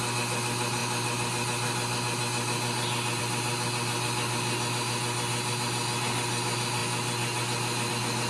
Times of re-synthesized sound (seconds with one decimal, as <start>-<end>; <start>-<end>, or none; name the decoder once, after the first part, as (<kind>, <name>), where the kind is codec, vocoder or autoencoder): none